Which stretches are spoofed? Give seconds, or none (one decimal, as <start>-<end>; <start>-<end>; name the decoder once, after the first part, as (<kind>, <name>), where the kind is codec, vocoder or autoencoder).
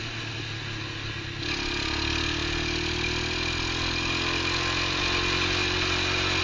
none